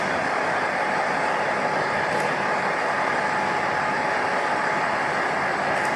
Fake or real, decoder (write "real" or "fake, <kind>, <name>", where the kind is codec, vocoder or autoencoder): real